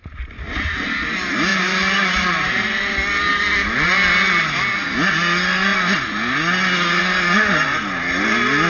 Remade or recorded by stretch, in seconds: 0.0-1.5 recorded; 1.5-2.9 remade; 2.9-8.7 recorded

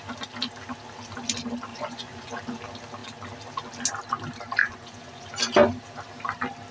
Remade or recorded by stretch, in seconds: 0.0-1.7 recorded; 1.7-2.3 remade; 2.3-4.6 recorded; 4.6-5.3 remade; 5.3-6.7 recorded

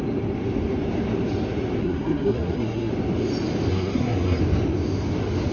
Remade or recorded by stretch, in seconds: 0.0-1.8 recorded; 1.8-2.9 remade; 2.9-3.7 recorded; 3.7-4.4 remade; 4.4-5.5 recorded

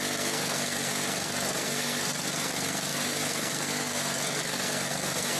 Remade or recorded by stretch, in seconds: 0.0-5.4 remade

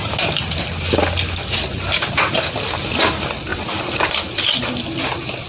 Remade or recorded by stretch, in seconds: 0.0-3.5 recorded; 3.5-4.6 remade; 4.6-5.5 recorded

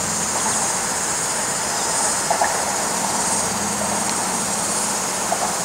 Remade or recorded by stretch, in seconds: 0.0-2.4 recorded; 2.4-2.9 remade; 2.9-5.6 recorded